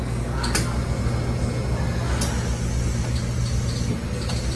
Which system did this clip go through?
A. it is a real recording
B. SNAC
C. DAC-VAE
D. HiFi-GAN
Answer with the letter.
A